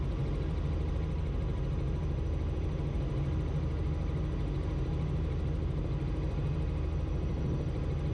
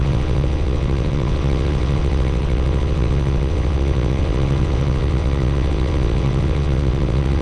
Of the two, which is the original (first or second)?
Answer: first